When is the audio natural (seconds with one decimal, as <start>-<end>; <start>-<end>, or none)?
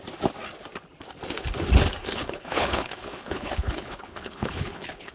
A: 0.0-2.0